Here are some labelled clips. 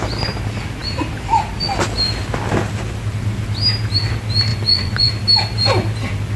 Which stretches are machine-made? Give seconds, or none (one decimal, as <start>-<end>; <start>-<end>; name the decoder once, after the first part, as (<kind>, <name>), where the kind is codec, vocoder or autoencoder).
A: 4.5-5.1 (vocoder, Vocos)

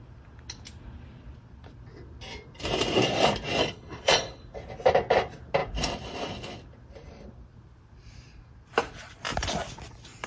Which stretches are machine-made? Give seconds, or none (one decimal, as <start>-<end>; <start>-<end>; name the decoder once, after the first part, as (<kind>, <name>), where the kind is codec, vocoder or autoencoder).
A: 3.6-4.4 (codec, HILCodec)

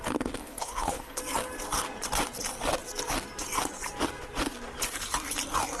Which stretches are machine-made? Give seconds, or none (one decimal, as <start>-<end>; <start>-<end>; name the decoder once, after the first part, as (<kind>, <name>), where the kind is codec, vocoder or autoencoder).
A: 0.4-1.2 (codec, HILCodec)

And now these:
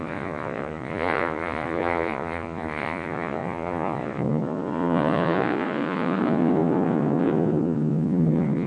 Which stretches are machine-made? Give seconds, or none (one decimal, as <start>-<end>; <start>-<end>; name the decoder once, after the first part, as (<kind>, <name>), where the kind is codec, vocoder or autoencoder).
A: 0.0-8.7 (vocoder, Vocos)

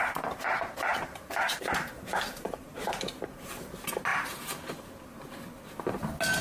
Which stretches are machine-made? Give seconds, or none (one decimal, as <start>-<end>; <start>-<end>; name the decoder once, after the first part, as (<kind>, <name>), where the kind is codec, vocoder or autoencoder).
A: 0.9-2.1 (vocoder, BigVGAN v2)